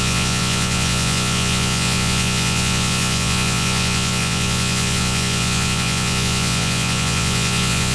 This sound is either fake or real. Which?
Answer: fake